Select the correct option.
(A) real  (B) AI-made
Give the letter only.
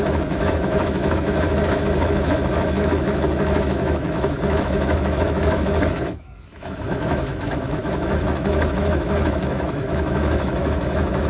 B